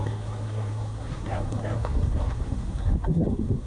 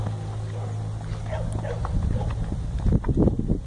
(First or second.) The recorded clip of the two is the second